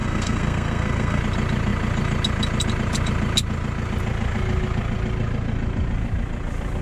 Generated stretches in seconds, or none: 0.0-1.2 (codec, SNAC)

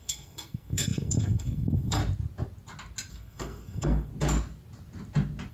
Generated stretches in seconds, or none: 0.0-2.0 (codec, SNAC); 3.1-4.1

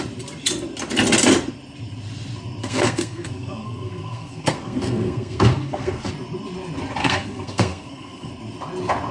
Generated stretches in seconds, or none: 2.6-6.1 (codec, SNAC); 7.0-8.3